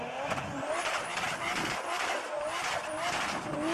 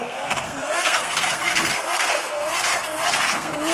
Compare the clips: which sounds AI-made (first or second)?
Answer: second